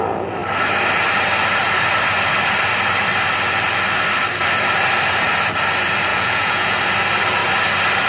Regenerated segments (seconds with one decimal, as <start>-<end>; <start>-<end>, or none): 6.1-6.8